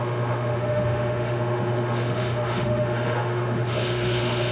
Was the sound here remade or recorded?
remade